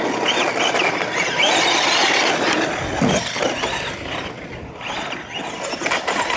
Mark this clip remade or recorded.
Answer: recorded